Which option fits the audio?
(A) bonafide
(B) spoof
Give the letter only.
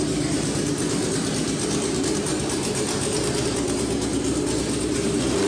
B